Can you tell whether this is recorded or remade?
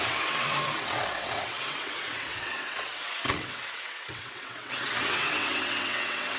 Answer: remade